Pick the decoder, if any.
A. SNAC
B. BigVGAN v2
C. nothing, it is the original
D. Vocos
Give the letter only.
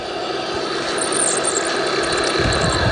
C